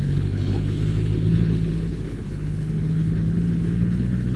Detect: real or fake fake